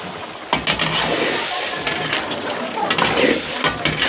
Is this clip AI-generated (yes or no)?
no